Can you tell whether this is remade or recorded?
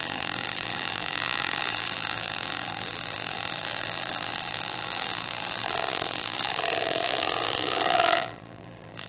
remade